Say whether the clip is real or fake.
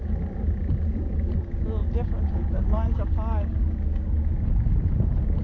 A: real